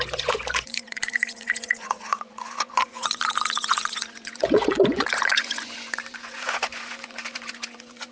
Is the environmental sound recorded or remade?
remade